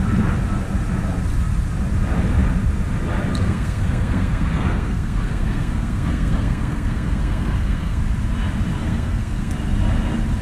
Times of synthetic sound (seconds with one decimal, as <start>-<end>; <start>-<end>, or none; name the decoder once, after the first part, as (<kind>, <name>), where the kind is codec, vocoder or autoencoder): 3.4-8.0 (codec, SNAC); 8.8-9.5